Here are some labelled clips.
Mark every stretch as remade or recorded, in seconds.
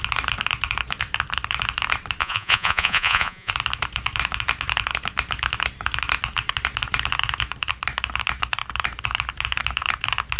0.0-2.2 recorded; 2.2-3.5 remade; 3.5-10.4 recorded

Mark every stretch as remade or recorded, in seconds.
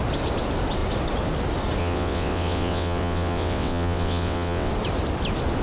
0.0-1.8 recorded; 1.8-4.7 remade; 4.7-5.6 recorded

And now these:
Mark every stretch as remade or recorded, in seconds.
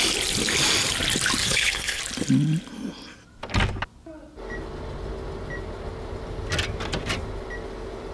0.0-1.4 recorded; 1.4-2.0 remade; 2.0-8.1 recorded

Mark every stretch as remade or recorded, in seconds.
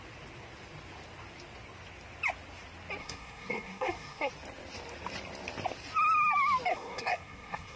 0.0-3.0 recorded; 3.0-4.3 remade; 4.3-6.7 recorded; 6.7-7.8 remade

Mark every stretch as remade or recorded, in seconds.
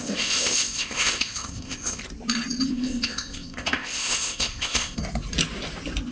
0.0-2.0 remade; 2.0-2.7 recorded; 2.7-5.0 remade; 5.0-6.1 recorded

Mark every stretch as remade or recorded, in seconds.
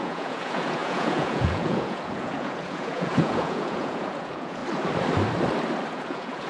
0.0-4.6 remade; 4.6-5.9 recorded; 5.9-6.5 remade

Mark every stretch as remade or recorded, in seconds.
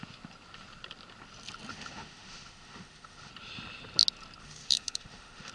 0.0-1.7 recorded; 1.7-3.3 remade; 3.3-4.4 recorded; 4.4-5.5 remade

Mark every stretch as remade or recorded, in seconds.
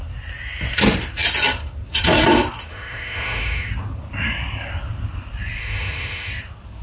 0.0-2.7 recorded; 2.7-3.7 remade; 3.7-5.6 recorded; 5.6-6.3 remade; 6.3-6.8 recorded